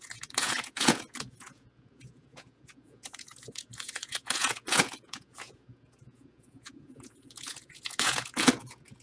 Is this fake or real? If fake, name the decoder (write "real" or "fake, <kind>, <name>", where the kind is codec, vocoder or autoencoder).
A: fake, vocoder, Vocos